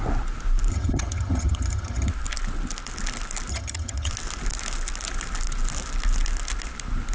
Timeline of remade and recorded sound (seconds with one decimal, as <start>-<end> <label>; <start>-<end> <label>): 0.0-0.7 recorded; 0.7-2.1 remade; 2.1-3.5 recorded; 3.5-4.1 remade; 4.1-7.1 recorded